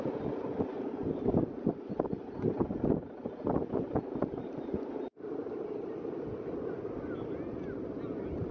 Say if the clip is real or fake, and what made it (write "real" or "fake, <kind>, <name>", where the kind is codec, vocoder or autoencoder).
real